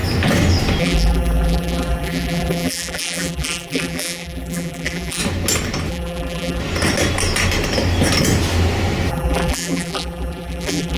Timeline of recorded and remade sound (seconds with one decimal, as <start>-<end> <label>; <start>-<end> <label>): 0.0-0.8 recorded; 0.8-5.2 remade; 5.2-5.9 recorded; 5.9-6.6 remade; 6.6-9.1 recorded; 9.1-11.0 remade